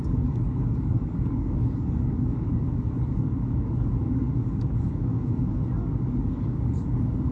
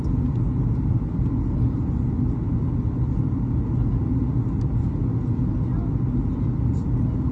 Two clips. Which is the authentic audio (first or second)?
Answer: second